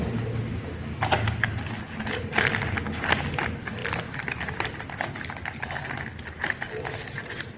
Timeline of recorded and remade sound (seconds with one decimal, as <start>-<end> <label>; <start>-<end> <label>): 0.0-7.6 recorded